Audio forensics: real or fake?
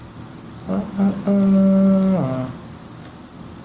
real